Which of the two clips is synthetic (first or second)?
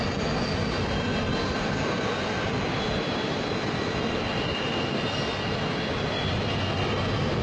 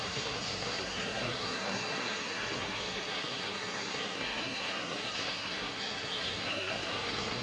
second